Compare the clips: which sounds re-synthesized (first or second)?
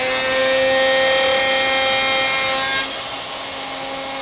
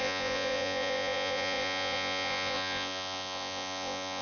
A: second